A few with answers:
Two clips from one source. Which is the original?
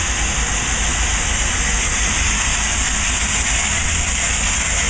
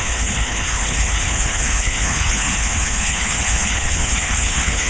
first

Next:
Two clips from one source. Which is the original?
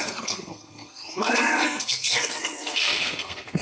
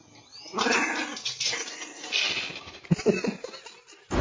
second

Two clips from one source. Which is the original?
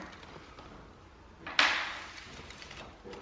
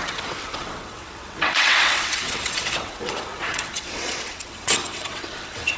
first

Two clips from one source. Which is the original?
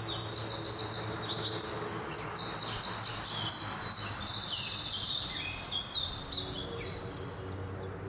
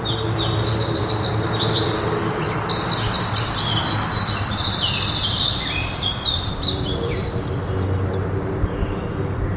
first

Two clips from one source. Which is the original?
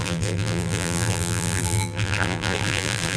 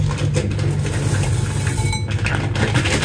second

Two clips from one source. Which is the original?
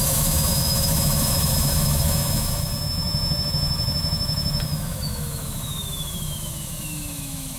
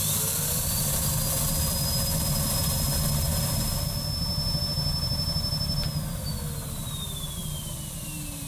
second